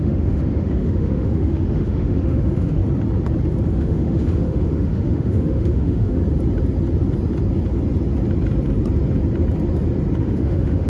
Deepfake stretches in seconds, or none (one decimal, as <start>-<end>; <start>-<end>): 0.0-2.8; 3.7-6.2; 10.2-10.9